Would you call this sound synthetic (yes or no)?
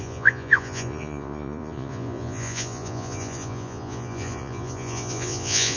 yes